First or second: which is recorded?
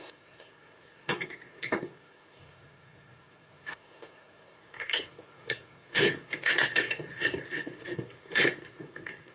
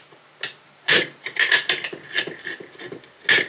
second